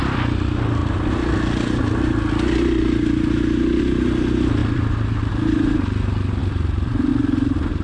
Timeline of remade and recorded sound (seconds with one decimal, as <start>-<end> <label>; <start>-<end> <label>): 0.0-4.6 recorded; 4.6-5.3 remade; 5.3-6.4 recorded; 6.4-7.1 remade; 7.1-7.8 recorded